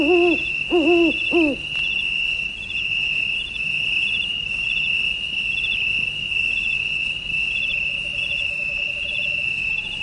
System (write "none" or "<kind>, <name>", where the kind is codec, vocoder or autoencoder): none